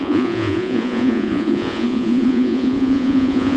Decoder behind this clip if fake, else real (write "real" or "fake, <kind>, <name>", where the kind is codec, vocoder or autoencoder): fake, vocoder, Vocos